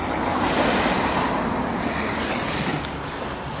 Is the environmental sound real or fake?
real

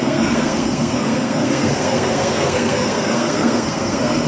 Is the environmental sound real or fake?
fake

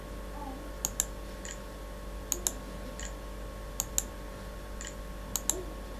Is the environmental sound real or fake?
real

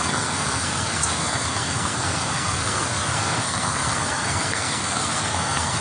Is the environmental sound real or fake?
fake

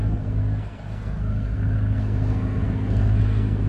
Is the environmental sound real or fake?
fake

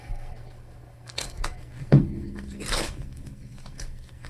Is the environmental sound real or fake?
fake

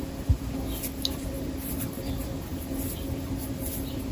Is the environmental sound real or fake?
real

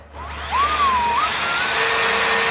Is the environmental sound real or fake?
real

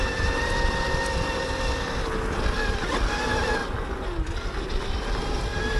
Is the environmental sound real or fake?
real